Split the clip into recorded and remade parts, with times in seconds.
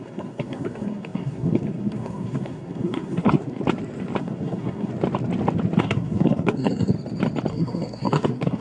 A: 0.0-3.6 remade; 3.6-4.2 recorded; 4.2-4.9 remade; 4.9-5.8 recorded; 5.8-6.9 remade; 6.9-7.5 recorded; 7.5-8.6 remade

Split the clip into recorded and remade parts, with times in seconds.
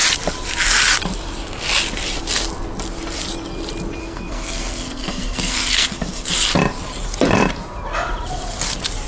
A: 0.0-4.0 recorded; 4.0-6.3 remade; 6.3-9.1 recorded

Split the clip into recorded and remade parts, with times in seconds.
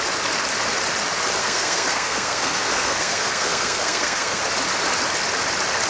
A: 0.0-1.4 recorded; 1.4-4.4 remade; 4.4-5.9 recorded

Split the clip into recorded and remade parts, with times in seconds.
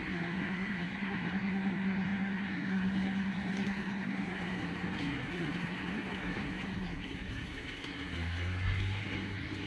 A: 0.0-9.7 remade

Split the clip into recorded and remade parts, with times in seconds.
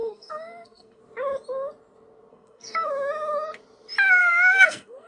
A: 0.0-1.0 remade; 1.0-2.3 recorded; 2.3-2.9 remade; 2.9-4.2 recorded; 4.2-5.1 remade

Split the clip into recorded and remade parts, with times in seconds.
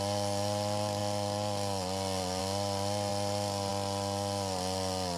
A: 0.0-5.2 recorded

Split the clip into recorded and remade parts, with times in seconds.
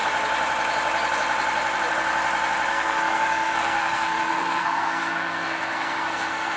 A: 0.0-2.7 recorded; 2.7-6.6 remade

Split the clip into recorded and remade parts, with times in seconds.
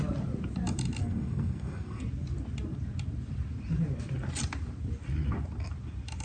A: 0.0-1.0 recorded; 1.0-2.0 remade; 2.0-6.2 recorded